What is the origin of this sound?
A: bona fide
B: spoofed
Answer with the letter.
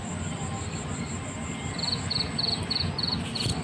A